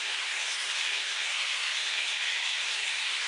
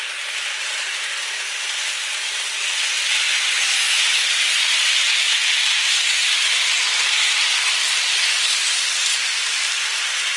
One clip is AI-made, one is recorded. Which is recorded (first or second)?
second